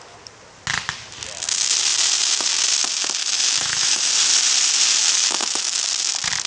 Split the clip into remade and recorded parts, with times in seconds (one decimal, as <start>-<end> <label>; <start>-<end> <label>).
0.0-3.2 recorded; 3.2-4.1 remade; 4.1-5.0 recorded; 5.0-5.9 remade; 5.9-6.5 recorded